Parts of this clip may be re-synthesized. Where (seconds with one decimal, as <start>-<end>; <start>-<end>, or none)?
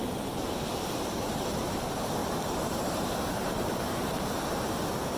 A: 0.0-5.2